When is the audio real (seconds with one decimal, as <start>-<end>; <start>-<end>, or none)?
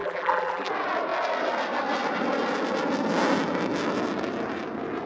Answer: 0.7-5.1